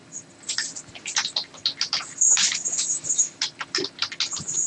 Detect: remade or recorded recorded